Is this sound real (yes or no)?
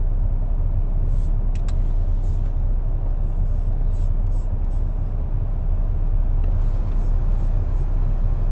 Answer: yes